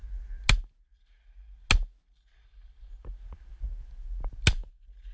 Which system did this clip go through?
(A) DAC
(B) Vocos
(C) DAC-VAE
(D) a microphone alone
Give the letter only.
D